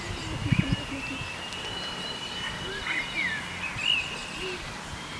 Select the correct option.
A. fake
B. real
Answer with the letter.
B